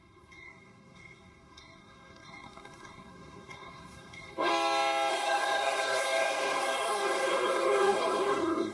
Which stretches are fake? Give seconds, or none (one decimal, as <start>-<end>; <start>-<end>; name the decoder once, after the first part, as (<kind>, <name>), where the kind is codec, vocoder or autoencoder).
0.0-4.5 (codec, SNAC); 5.1-8.7

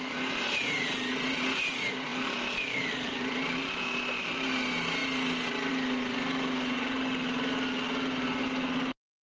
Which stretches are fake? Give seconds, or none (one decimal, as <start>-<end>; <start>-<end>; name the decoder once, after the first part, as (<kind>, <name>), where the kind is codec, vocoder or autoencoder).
2.1-3.6 (vocoder, BigVGAN v2); 5.0-5.7